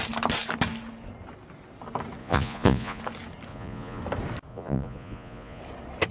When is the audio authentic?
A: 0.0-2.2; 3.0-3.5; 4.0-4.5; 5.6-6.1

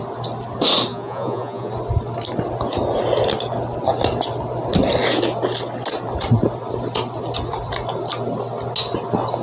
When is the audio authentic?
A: 0.0-0.9; 1.7-9.4

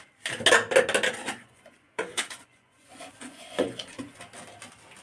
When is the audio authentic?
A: 0.0-1.2; 4.2-5.0

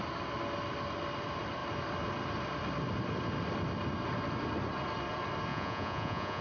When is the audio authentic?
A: 0.0-5.5